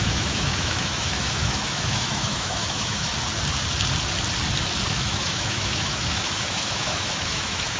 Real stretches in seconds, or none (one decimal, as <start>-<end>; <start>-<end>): 3.1-4.9